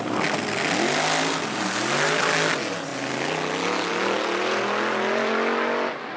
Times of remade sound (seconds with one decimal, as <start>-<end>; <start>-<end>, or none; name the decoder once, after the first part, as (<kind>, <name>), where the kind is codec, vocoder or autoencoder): none